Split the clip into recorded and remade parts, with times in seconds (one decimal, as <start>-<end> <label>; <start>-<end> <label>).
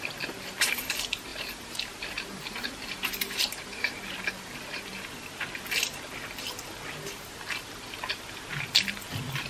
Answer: 0.0-1.3 recorded; 1.3-4.0 remade; 4.0-9.5 recorded